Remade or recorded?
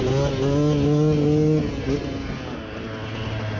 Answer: recorded